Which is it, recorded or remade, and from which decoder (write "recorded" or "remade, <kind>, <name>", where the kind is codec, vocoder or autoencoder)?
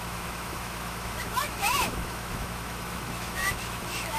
remade, autoencoder, DAC-VAE